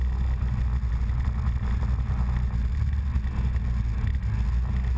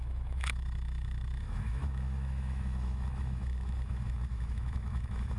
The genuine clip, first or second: first